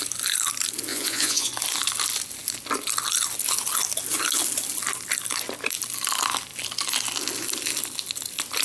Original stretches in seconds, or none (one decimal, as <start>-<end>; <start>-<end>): 0.0-0.9; 1.5-8.6